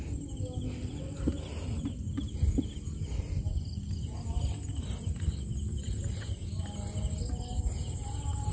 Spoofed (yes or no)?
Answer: no